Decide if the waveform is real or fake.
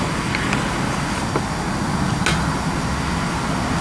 real